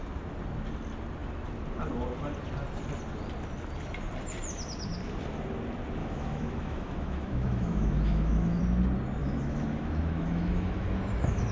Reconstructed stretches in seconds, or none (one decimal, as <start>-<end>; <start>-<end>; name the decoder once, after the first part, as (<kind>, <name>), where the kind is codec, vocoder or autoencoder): 6.0-8.6 (autoencoder, DAC-VAE); 9.2-11.5